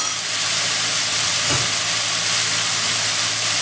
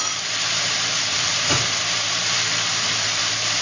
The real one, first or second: first